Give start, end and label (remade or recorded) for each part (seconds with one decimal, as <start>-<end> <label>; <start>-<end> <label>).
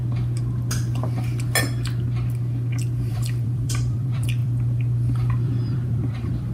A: 0.0-3.1 recorded; 3.1-6.5 remade